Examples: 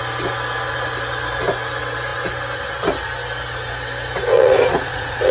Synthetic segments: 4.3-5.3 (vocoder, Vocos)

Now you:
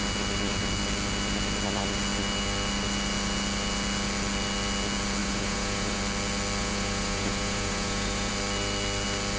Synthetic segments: 5.2-6.0 (vocoder, Vocos); 6.6-8.3